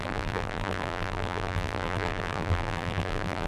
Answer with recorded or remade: remade